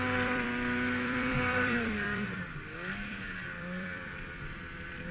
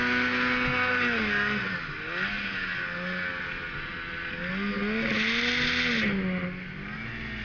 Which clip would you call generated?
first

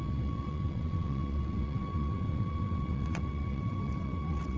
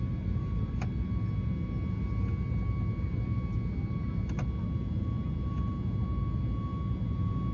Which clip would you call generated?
first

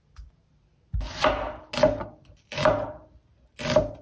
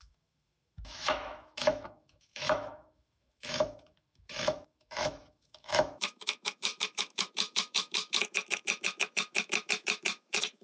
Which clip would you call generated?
second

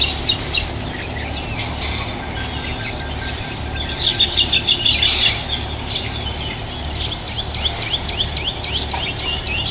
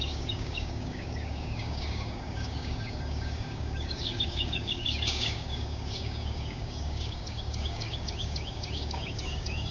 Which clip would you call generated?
second